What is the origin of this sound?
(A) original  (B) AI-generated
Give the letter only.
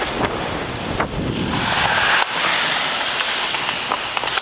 A